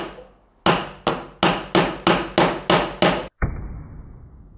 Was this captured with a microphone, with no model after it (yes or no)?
yes